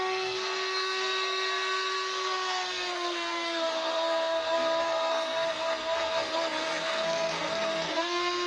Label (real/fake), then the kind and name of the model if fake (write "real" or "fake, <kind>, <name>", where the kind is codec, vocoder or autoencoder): fake, codec, SNAC